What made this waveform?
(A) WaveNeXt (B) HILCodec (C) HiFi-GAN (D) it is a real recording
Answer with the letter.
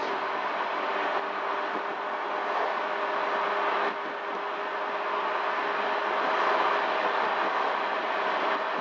D